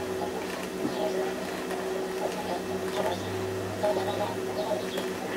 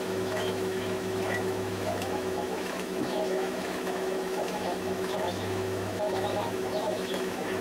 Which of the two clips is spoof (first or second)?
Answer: second